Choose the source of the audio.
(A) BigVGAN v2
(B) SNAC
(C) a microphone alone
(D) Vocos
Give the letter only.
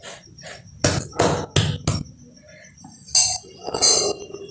C